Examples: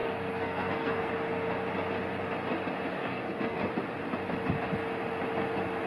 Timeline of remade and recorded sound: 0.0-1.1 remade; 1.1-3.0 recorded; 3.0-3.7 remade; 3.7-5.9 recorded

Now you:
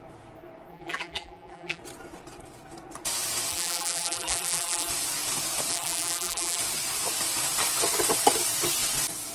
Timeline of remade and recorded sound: 0.0-0.7 recorded; 0.7-1.8 remade; 1.8-3.5 recorded; 3.5-4.9 remade; 4.9-5.7 recorded; 5.7-6.6 remade; 6.6-9.3 recorded